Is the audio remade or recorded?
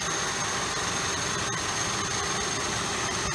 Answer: recorded